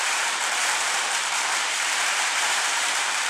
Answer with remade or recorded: remade